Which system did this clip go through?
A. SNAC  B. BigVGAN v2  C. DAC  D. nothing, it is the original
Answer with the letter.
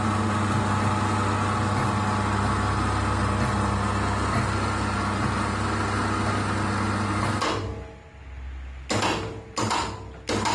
D